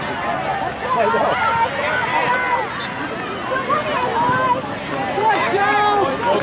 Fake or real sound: real